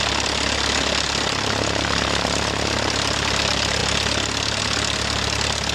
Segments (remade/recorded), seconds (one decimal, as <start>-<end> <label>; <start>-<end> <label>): 0.0-5.7 recorded